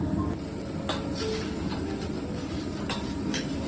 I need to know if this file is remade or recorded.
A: recorded